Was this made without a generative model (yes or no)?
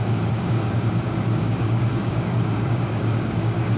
no